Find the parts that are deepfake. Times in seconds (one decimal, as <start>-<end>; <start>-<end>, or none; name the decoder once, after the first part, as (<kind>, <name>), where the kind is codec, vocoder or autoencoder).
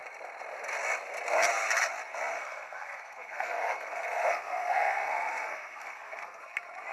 2.3-6.4 (codec, SNAC)